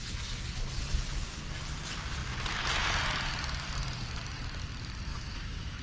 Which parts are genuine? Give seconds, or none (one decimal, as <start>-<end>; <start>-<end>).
0.0-5.1

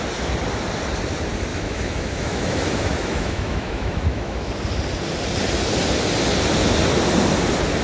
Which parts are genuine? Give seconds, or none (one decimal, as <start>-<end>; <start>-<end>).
0.0-1.5; 4.5-7.8

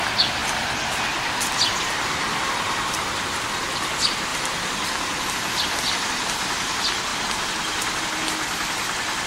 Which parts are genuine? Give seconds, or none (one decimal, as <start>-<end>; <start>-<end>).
0.0-9.3